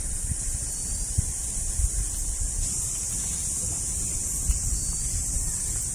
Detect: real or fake real